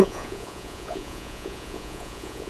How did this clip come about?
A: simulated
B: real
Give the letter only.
A